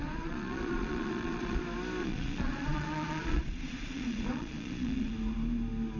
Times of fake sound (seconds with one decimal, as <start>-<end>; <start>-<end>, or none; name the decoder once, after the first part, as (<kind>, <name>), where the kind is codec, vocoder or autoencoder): 0.0-1.6 (vocoder, Vocos); 2.0-5.1